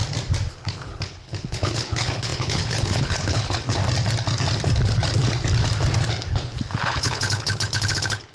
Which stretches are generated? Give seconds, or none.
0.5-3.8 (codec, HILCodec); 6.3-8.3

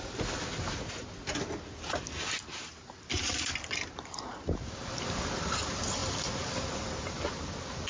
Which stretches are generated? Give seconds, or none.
none